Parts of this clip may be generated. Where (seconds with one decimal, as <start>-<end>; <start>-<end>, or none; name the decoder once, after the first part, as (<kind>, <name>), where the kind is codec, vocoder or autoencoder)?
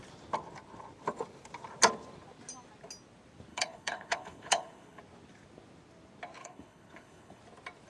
3.5-5.0 (codec, HILCodec); 6.4-7.4